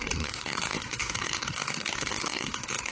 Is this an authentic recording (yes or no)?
no